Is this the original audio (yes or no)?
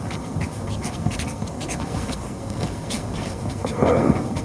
no